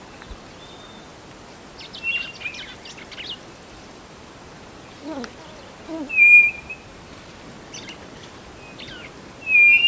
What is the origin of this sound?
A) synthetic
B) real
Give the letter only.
B